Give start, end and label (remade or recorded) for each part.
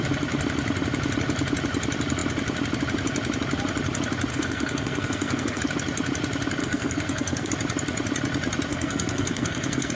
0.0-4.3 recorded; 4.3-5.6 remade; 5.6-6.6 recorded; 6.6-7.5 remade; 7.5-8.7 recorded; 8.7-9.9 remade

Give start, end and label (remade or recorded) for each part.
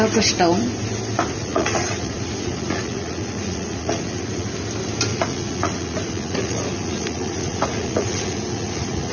0.0-1.4 recorded; 1.4-4.5 remade; 4.5-5.1 recorded; 5.1-9.1 remade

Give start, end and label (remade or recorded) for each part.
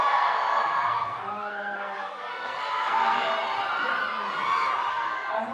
0.0-3.3 remade; 3.3-4.9 recorded; 4.9-5.5 remade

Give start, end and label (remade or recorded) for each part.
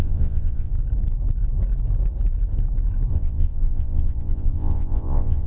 0.0-0.7 remade; 0.7-3.1 recorded; 3.1-5.5 remade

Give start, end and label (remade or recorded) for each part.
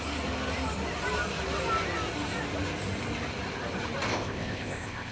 0.0-4.1 recorded; 4.1-5.1 remade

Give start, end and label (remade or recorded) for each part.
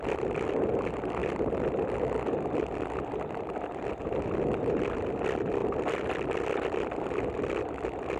0.0-5.6 remade; 5.6-7.6 recorded; 7.6-8.2 remade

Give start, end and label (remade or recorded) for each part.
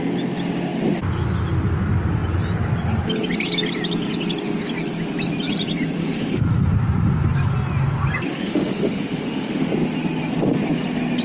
0.0-6.0 recorded; 6.0-6.7 remade; 6.7-8.3 recorded; 8.3-9.7 remade; 9.7-11.2 recorded